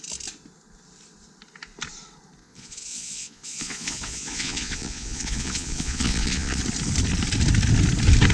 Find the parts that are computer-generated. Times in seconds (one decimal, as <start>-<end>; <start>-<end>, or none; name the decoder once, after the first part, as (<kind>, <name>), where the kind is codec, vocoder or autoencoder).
2.4-6.6 (vocoder, Vocos)

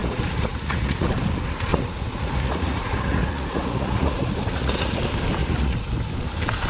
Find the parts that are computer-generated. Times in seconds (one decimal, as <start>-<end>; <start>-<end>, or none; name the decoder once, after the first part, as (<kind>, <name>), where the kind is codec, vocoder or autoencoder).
0.0-1.1 (vocoder, Vocos); 1.7-5.0; 5.4-5.9

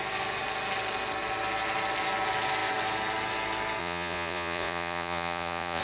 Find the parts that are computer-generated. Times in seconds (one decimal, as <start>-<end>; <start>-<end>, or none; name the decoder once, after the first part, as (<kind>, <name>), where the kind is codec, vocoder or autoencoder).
3.8-5.8 (vocoder, Vocos)

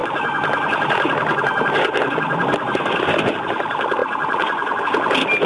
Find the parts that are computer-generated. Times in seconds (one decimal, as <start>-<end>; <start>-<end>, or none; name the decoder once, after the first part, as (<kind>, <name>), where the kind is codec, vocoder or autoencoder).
4.0-4.8 (vocoder, Vocos)

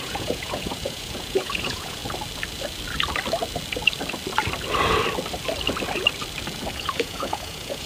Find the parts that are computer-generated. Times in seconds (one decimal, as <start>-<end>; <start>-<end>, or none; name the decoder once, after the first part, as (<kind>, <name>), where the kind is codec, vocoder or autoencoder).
0.0-2.0 (vocoder, Vocos); 6.7-7.9

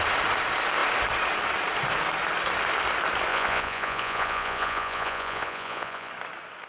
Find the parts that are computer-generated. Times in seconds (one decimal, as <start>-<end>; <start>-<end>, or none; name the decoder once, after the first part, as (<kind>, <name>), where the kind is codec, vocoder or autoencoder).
3.3-6.1 (vocoder, Vocos)

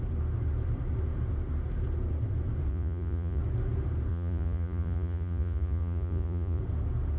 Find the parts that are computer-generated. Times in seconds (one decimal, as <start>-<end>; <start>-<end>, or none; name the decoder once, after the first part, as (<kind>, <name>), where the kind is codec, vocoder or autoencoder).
2.7-3.4 (vocoder, Vocos); 4.1-6.6